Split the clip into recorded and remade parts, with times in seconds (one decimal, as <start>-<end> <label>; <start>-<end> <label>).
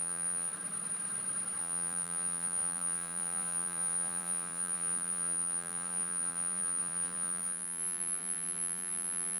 0.0-0.5 remade; 0.5-1.6 recorded; 1.6-9.4 remade